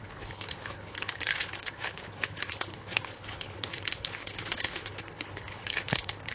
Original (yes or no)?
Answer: no